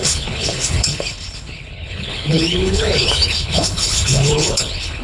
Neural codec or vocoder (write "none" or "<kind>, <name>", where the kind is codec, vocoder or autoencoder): codec, HILCodec